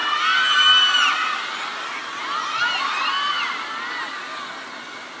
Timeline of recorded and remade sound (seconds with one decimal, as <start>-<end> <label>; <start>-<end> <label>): 0.0-5.2 recorded